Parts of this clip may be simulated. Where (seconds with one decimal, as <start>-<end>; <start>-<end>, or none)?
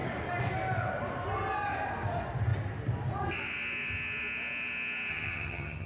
5.1-5.9